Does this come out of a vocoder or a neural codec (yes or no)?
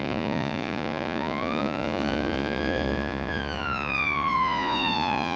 yes